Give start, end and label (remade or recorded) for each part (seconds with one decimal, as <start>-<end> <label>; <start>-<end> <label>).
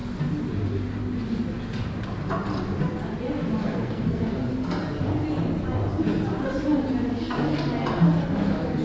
0.0-3.6 recorded; 3.6-4.2 remade; 4.2-8.8 recorded